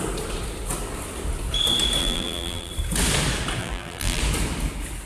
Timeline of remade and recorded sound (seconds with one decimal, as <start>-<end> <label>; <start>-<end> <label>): 0.0-2.0 recorded; 2.0-2.7 remade; 2.7-3.6 recorded; 3.6-4.2 remade; 4.2-5.1 recorded